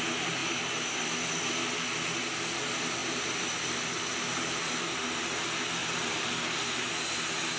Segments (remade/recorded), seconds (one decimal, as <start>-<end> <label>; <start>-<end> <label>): 0.0-0.4 recorded; 0.4-1.3 remade; 1.3-5.8 recorded; 5.8-6.8 remade; 6.8-7.6 recorded